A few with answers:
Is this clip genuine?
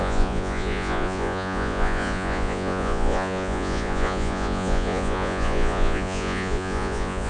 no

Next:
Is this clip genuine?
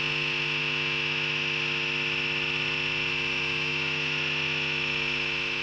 no